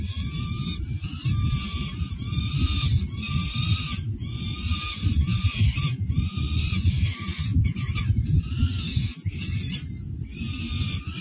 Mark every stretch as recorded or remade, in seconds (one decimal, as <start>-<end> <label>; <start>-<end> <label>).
0.0-6.3 recorded; 6.3-7.0 remade; 7.0-11.2 recorded